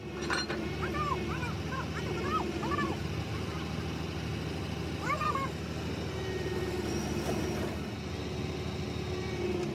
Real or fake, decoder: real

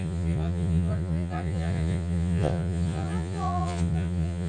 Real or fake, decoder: fake, vocoder, Vocos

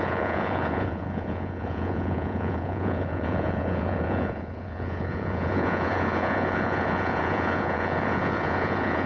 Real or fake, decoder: fake, vocoder, Vocos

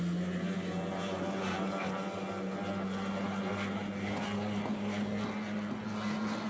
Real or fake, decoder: real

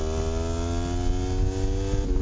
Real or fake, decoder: real